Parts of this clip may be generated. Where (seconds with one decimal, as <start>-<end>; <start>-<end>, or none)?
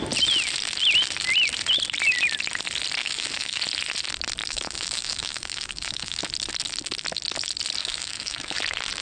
3.0-3.6; 4.4-6.2; 7.8-8.6